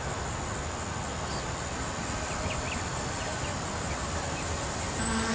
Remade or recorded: recorded